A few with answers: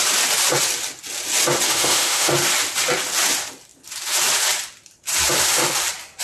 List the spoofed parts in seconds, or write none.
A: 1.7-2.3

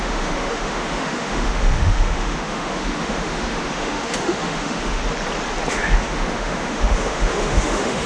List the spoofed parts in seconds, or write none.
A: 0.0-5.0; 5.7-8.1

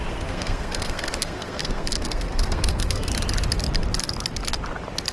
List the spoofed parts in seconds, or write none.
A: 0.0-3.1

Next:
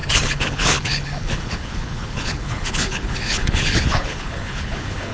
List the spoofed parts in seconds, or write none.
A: 0.0-5.1

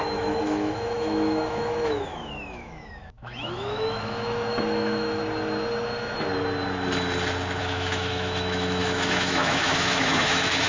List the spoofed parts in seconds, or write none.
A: 0.0-5.2; 7.6-10.7